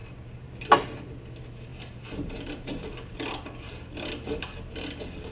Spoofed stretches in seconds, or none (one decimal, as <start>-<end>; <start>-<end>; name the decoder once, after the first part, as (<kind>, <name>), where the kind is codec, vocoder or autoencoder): 0.0-0.5 (vocoder, BigVGAN v2); 1.7-3.9